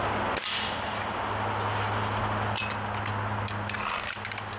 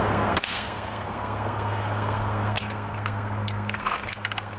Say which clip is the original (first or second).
first